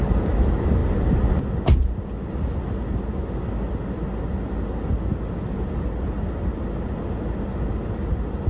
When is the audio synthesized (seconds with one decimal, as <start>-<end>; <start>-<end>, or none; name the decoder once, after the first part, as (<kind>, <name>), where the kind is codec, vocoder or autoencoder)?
none